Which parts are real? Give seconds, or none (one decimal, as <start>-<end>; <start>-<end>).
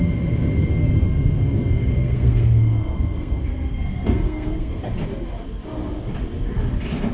0.0-0.7; 4.8-7.1